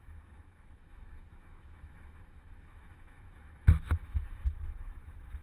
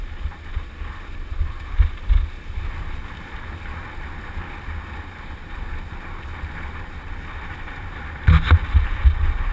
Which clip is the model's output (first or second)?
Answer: first